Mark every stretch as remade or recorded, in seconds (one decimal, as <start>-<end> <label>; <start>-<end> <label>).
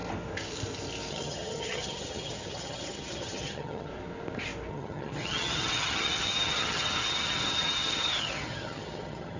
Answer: 0.0-1.1 recorded; 1.1-3.9 remade; 3.9-4.7 recorded; 4.7-9.4 remade